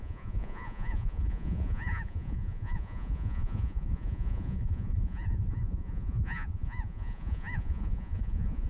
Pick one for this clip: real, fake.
fake